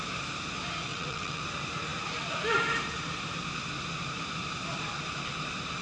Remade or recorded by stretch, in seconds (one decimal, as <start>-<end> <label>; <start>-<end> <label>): 0.0-0.9 recorded; 0.9-1.4 remade; 1.4-5.8 recorded